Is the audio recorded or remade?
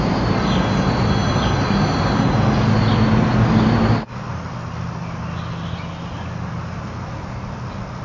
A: recorded